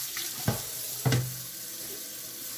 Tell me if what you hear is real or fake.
real